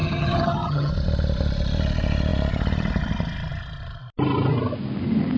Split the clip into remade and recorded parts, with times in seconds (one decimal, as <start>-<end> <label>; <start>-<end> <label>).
0.0-0.9 remade; 0.9-5.4 recorded